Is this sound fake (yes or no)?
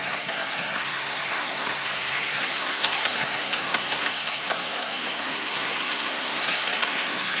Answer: yes